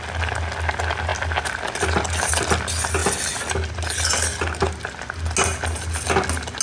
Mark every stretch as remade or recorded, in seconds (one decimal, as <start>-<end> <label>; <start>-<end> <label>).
0.0-6.6 recorded